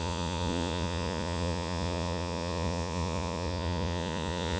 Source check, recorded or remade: remade